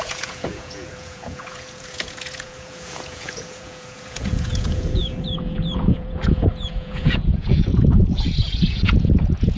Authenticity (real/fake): fake